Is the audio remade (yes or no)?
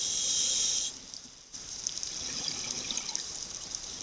yes